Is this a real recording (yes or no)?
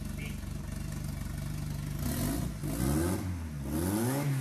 yes